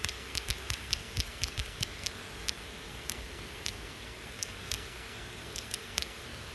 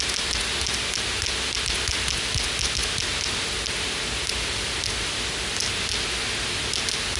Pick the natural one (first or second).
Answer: second